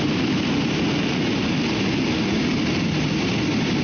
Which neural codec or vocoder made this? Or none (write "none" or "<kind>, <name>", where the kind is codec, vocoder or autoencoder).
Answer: none